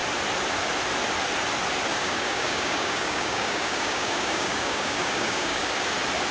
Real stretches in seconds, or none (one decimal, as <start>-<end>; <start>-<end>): 0.0-1.9; 5.7-6.3